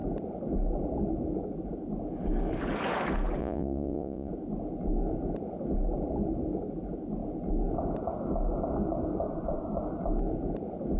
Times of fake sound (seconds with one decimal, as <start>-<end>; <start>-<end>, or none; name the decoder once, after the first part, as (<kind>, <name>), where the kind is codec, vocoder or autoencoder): 3.4-4.3 (vocoder, Vocos)